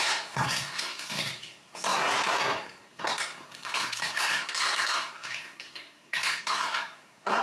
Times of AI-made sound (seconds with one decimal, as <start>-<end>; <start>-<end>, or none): 0.0-7.4